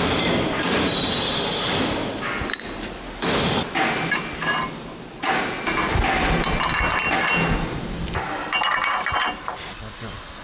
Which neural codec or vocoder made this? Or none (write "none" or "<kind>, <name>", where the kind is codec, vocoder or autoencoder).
none